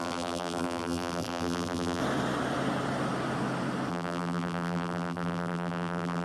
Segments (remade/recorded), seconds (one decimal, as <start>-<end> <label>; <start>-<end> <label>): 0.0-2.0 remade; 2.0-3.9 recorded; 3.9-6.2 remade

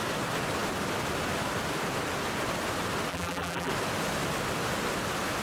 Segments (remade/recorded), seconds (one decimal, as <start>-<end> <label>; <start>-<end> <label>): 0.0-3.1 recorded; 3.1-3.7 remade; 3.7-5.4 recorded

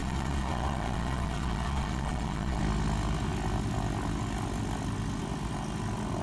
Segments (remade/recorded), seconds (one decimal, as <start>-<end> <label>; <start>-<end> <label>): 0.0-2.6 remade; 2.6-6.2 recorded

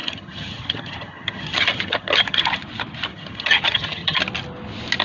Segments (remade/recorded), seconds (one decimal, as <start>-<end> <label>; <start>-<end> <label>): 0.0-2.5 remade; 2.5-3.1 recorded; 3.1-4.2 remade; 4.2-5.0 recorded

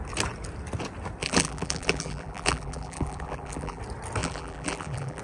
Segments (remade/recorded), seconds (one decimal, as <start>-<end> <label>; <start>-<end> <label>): 0.0-1.2 recorded; 1.2-3.8 remade; 3.8-4.2 recorded; 4.2-5.2 remade

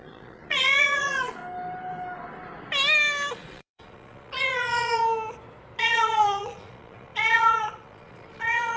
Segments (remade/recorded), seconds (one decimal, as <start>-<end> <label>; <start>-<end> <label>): 0.0-1.4 remade; 1.4-3.3 recorded; 3.3-5.0 remade; 5.0-5.8 recorded; 5.8-8.8 remade

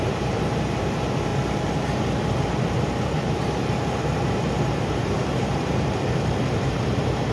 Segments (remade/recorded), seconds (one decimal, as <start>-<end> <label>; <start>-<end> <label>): 0.0-7.3 remade

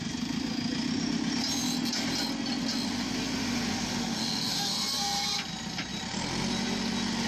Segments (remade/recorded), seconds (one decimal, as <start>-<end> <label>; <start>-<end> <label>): 0.0-5.9 recorded; 5.9-7.3 remade